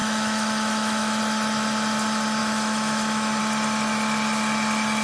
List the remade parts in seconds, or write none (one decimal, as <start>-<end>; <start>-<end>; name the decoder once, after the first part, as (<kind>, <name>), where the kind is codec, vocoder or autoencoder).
0.0-1.2 (autoencoder, DAC-VAE); 2.4-3.4